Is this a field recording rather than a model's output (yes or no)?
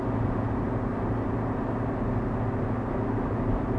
yes